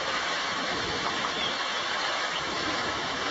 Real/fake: fake